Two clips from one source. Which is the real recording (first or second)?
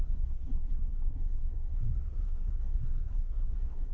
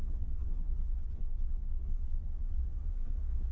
second